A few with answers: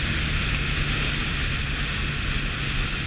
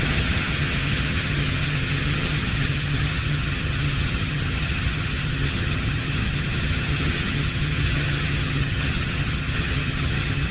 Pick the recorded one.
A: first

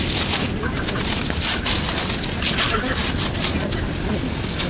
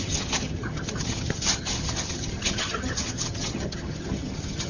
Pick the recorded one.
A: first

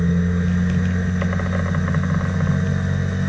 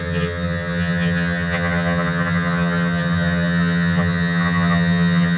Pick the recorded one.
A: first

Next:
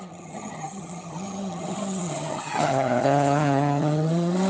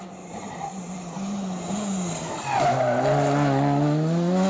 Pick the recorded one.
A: second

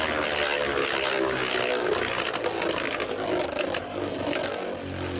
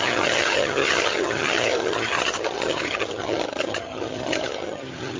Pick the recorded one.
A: first